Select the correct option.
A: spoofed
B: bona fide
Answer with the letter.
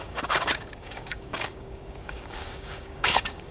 A